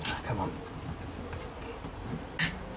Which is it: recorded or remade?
recorded